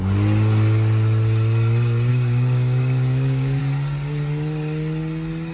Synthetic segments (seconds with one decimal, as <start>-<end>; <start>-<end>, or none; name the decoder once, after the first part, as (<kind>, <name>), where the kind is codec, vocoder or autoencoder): 2.1-3.6 (codec, DAC)